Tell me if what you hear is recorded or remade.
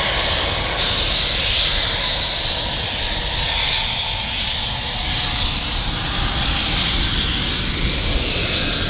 recorded